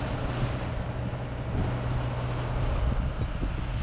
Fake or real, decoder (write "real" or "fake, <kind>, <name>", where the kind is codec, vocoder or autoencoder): real